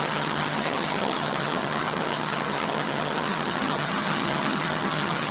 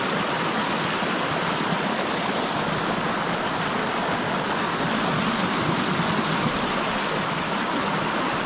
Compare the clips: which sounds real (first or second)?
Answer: second